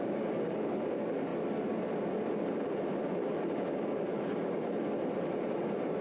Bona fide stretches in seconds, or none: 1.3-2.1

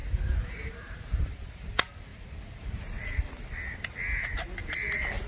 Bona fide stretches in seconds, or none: 1.7-2.1; 3.3-4.6

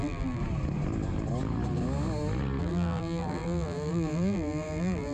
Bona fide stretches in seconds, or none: 0.4-2.6

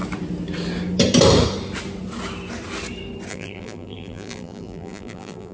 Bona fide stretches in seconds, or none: 0.0-3.3

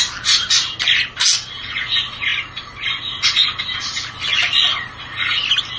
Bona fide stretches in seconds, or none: 0.0-2.3; 3.1-4.3; 5.2-5.8